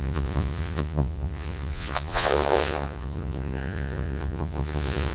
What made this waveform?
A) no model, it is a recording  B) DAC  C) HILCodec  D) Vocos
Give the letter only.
D